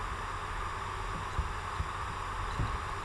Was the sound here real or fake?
real